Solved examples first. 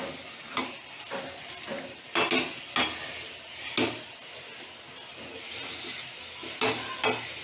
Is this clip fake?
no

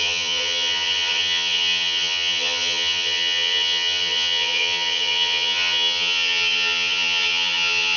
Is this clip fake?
yes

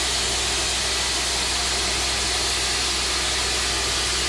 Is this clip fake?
no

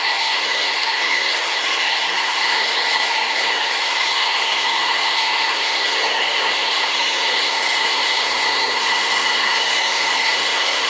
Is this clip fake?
yes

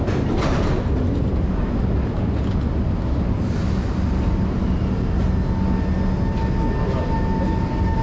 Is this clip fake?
no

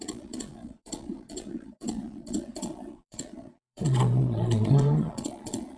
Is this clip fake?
yes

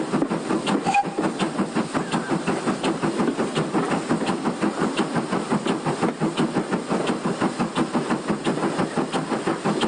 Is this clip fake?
no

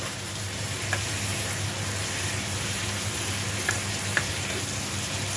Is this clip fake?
no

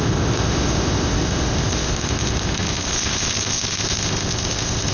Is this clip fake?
yes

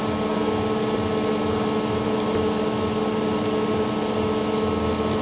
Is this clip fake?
no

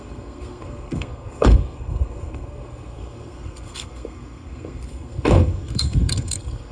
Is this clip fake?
yes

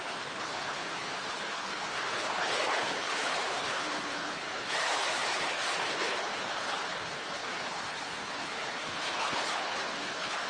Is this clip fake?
yes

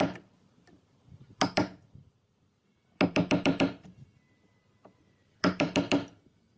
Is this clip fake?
yes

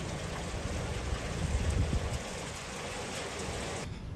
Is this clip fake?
yes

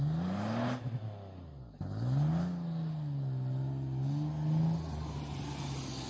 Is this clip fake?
no